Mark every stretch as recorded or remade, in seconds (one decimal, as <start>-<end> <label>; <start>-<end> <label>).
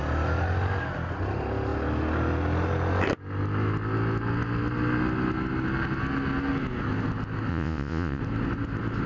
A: 0.0-7.5 recorded; 7.5-8.2 remade; 8.2-9.1 recorded